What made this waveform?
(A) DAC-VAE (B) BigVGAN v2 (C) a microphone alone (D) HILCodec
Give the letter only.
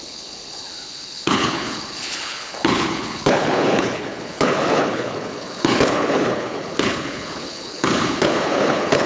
D